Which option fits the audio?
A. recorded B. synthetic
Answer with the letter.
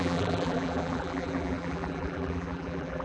B